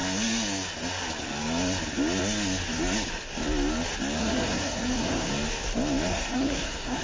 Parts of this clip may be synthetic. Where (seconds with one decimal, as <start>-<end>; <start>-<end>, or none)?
4.2-5.3; 6.1-7.0